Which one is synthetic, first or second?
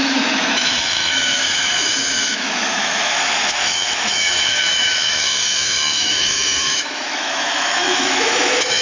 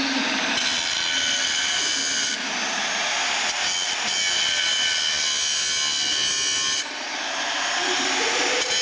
first